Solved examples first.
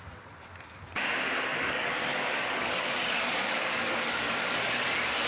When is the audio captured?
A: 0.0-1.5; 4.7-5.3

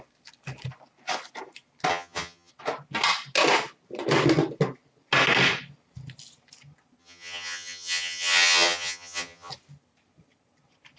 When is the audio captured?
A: 0.0-1.9; 2.5-7.0; 9.5-11.0

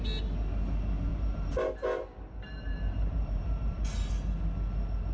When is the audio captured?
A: 0.0-1.1; 4.1-5.1

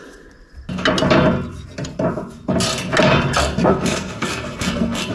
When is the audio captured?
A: 0.0-3.7

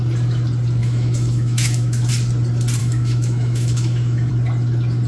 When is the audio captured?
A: 0.0-0.8; 2.1-2.8; 4.3-5.1